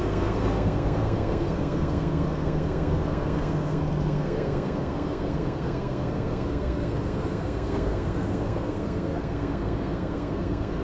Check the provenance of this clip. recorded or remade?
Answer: remade